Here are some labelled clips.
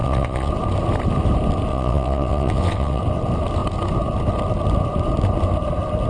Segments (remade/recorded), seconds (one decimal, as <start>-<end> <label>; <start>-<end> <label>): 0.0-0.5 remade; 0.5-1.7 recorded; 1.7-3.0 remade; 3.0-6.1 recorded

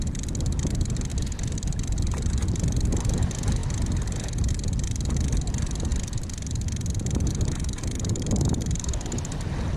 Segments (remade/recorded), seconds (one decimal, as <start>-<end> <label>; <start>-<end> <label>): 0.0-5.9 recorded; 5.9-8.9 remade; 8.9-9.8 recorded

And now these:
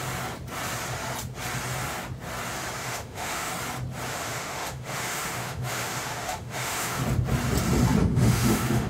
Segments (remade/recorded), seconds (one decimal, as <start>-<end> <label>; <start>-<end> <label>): 0.0-2.8 recorded; 2.8-3.5 remade; 3.5-4.1 recorded; 4.1-7.0 remade; 7.0-8.0 recorded; 8.0-8.9 remade